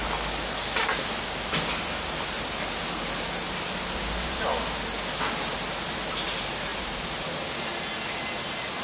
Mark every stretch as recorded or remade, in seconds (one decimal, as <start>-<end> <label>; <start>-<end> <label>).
0.0-8.8 recorded

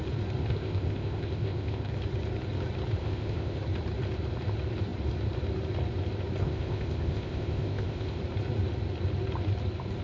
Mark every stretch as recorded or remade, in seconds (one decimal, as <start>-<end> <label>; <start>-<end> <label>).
0.0-0.4 recorded; 0.4-1.9 remade; 1.9-3.0 recorded; 3.0-3.6 remade; 3.6-6.4 recorded; 6.4-8.2 remade; 8.2-10.0 recorded